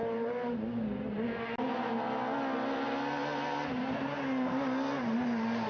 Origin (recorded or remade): recorded